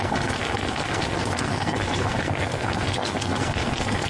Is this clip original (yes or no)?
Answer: no